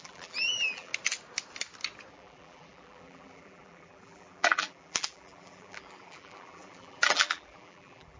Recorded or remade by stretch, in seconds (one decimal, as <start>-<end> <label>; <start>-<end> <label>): 0.0-0.9 remade; 0.9-2.1 recorded; 2.1-8.2 remade